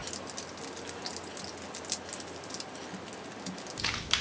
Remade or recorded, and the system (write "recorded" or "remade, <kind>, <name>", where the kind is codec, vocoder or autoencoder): recorded